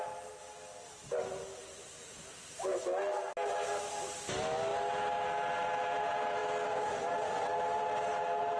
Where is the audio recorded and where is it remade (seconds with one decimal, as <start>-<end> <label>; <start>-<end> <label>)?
0.0-8.6 recorded